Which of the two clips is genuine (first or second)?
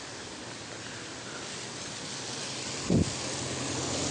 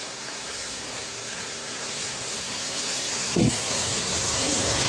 first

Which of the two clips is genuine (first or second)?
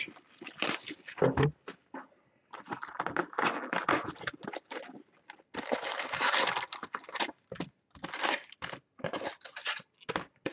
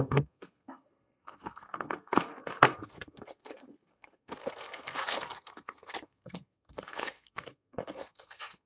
first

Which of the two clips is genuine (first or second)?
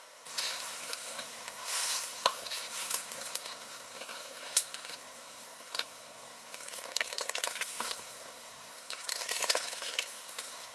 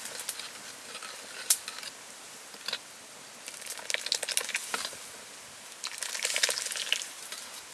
second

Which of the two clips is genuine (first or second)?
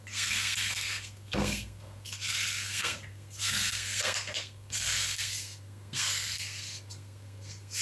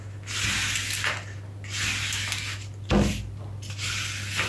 second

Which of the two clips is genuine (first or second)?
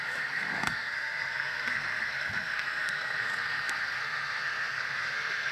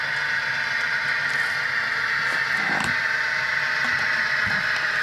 second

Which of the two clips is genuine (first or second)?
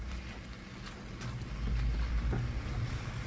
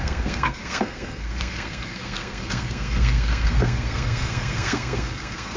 first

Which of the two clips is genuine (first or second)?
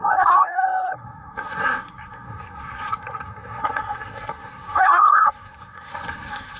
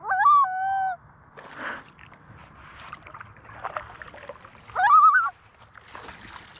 second